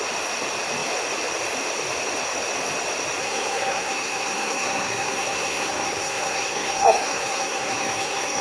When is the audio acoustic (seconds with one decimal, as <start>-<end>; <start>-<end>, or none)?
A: 0.0-3.2